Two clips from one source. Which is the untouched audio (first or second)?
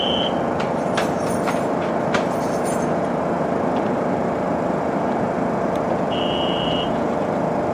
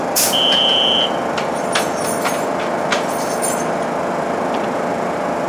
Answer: second